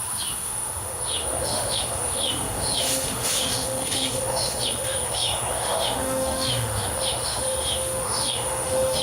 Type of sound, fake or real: fake